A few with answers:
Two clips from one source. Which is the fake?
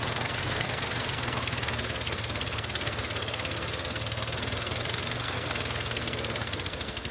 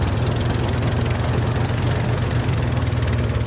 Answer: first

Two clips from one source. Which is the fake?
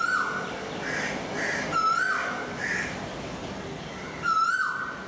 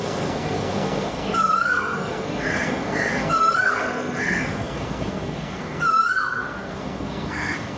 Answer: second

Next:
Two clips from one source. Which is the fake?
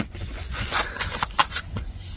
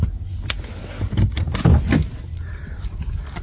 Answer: first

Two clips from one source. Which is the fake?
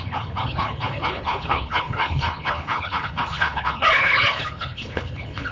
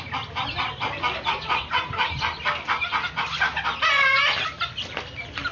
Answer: first